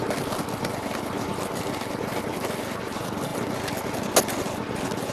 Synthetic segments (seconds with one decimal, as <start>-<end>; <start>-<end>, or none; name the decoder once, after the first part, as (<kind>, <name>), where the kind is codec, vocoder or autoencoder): none